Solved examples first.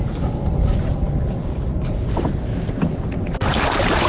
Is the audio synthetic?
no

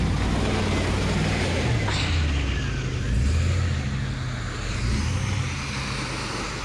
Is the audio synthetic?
no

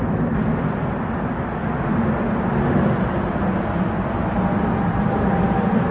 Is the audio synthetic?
no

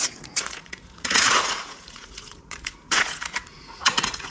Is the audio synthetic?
yes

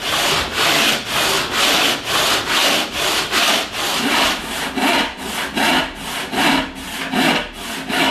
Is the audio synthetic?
no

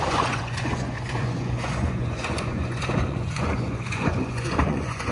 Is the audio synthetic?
yes